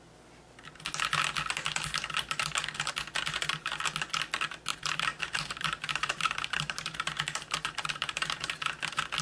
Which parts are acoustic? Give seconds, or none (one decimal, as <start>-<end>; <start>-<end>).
0.0-4.7; 8.7-9.2